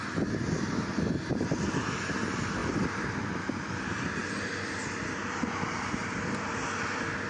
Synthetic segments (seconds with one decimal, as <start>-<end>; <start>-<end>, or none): none